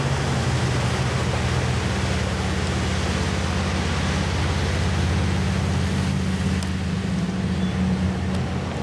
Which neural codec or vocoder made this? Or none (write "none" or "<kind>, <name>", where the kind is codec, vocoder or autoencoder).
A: none